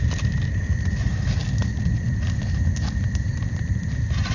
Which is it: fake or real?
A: real